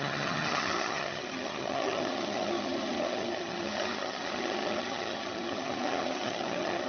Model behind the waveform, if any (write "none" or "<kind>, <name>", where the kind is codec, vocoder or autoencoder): vocoder, HiFi-GAN